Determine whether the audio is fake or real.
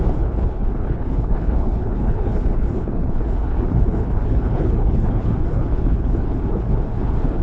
fake